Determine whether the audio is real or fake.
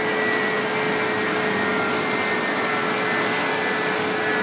real